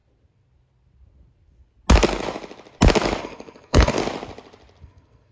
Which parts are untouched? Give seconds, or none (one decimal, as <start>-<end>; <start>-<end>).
0.0-3.2; 4.0-4.8